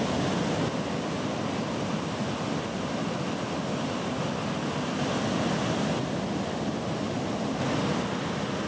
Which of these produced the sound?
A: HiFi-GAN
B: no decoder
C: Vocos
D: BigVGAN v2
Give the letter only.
B